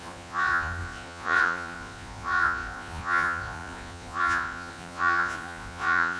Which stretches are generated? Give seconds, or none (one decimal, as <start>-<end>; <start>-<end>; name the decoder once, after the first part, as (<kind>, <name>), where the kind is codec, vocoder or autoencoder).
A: 0.0-6.2 (vocoder, Vocos)